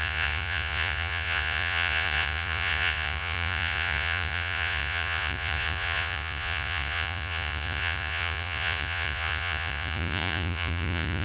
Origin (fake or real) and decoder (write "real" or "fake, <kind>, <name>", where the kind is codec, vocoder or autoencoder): fake, vocoder, Vocos